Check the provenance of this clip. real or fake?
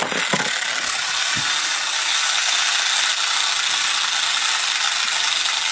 real